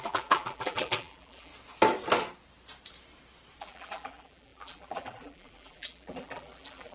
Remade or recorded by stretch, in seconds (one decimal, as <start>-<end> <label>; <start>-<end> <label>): 0.0-1.5 remade; 1.5-3.6 recorded; 3.6-6.9 remade